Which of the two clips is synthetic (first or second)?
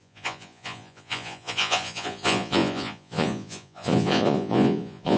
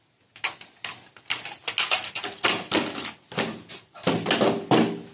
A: first